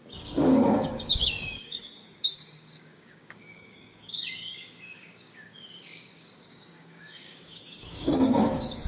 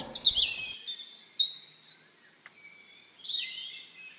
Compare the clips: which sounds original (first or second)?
second